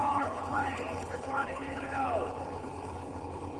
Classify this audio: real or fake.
fake